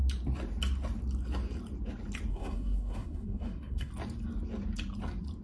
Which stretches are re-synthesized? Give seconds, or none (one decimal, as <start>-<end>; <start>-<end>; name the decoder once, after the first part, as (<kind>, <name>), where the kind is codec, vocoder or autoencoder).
2.3-3.9 (codec, SNAC)